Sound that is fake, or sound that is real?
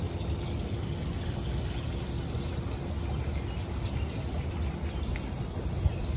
real